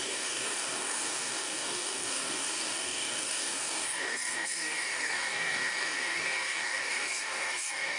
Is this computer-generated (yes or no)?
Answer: yes